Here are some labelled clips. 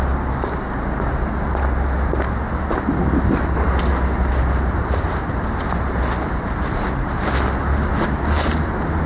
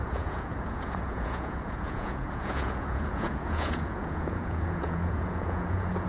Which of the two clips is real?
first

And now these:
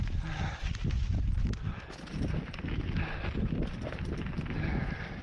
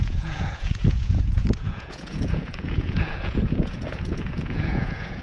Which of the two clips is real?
first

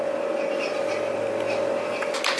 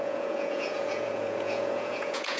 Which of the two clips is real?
first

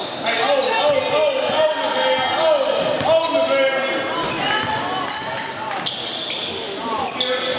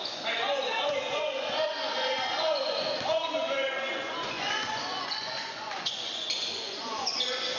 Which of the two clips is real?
first